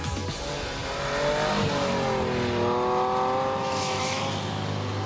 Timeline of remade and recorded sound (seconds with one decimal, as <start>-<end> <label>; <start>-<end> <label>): 0.0-3.6 recorded; 3.6-4.2 remade; 4.2-5.1 recorded